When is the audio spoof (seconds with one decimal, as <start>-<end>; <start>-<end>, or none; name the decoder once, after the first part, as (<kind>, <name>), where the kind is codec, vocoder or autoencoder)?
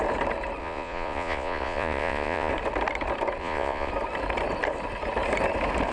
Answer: 0.6-2.5 (vocoder, Vocos); 3.4-3.9